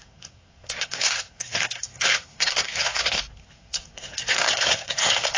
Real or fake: fake